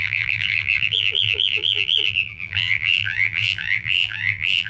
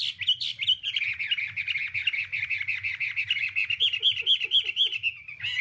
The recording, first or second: second